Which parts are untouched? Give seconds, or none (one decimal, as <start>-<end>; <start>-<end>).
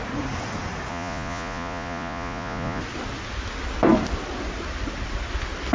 0.0-0.9; 2.8-5.7